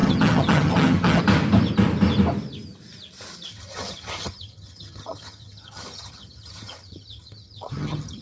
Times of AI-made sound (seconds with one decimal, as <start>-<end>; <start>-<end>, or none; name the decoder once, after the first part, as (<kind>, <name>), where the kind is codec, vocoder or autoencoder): 0.0-1.2 (vocoder, HiFi-GAN); 3.5-8.2